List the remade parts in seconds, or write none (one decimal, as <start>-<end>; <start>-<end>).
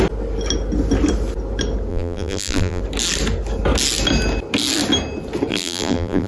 1.9-2.8; 5.5-6.3